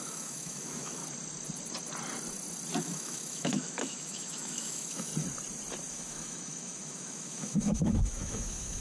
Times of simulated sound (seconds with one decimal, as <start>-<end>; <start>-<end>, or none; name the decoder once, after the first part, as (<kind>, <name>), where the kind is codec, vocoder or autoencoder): 0.0-1.0 (autoencoder, DAC-VAE); 2.8-5.1; 5.9-8.8